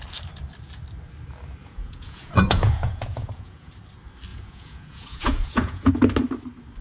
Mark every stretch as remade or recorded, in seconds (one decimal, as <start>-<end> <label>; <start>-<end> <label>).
0.0-1.6 recorded; 1.6-3.7 remade; 3.7-4.3 recorded; 4.3-5.9 remade; 5.9-6.8 recorded